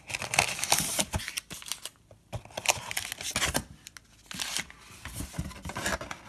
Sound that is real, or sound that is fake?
real